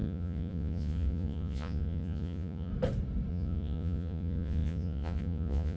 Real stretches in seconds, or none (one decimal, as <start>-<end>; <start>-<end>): 2.7-3.3